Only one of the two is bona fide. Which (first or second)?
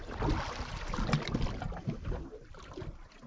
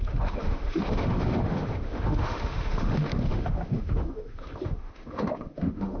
first